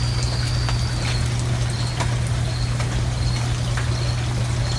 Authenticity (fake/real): real